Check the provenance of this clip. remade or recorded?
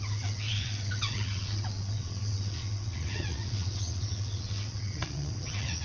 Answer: remade